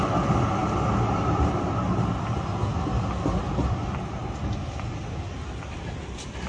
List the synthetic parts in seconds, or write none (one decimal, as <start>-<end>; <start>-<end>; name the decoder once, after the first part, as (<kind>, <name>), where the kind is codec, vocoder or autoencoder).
none